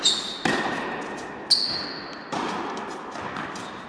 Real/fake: real